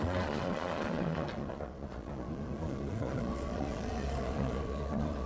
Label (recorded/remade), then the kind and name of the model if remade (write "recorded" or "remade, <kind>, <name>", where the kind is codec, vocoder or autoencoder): remade, vocoder, Vocos